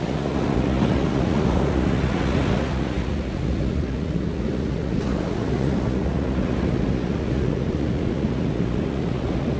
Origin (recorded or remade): remade